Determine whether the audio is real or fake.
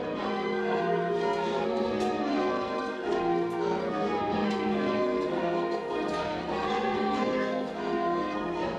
fake